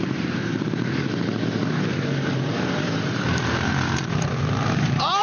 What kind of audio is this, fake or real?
fake